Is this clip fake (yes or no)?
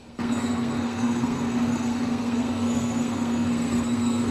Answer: yes